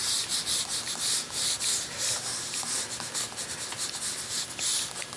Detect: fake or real real